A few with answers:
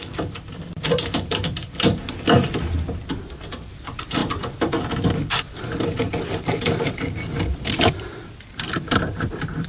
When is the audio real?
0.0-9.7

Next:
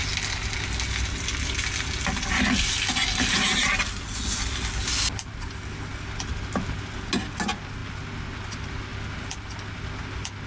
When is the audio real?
0.0-10.5